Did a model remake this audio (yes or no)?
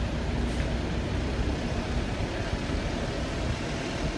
no